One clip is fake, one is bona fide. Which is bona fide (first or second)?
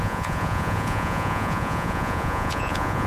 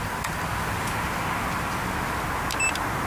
second